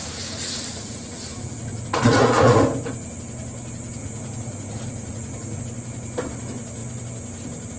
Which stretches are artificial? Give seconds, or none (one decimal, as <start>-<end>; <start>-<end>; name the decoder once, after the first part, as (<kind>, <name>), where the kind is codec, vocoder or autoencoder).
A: 0.0-2.6 (vocoder, Vocos); 4.0-5.6